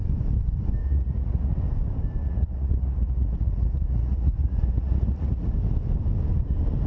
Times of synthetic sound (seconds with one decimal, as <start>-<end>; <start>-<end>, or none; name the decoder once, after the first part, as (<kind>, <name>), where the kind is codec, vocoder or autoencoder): 0.8-1.6 (vocoder, Vocos); 2.2-5.5